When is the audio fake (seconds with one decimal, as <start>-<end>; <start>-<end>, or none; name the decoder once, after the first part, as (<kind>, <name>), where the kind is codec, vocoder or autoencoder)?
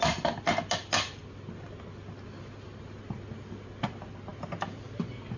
none